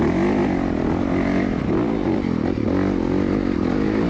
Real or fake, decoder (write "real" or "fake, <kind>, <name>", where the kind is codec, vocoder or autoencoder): real